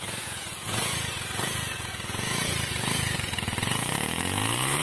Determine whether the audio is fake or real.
fake